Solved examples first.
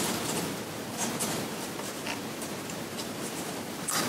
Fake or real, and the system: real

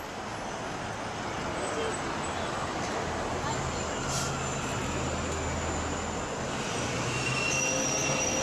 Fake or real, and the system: real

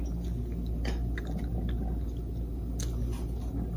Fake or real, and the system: real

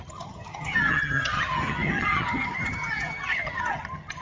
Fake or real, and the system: fake, vocoder, HiFi-GAN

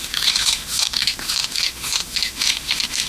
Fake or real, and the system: fake, autoencoder, DAC-VAE